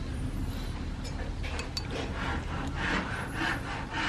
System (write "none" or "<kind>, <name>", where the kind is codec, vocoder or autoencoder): none